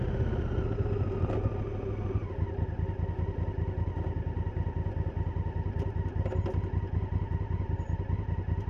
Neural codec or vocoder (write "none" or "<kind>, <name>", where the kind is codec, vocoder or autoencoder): none